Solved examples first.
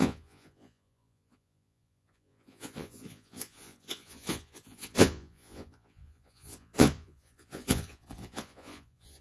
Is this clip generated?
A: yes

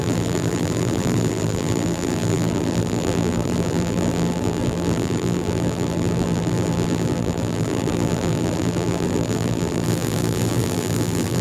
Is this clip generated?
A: yes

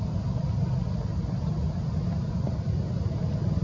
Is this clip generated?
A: no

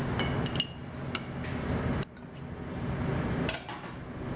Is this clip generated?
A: no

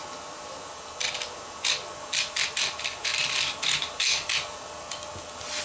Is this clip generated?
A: no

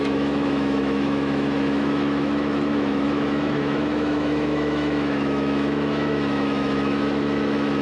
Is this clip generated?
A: yes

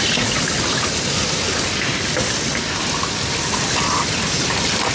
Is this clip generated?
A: no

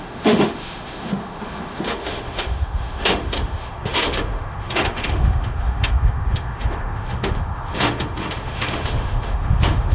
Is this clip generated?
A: yes